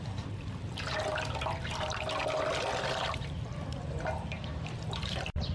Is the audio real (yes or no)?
yes